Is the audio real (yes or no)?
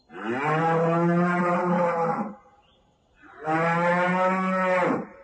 yes